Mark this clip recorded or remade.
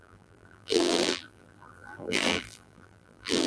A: remade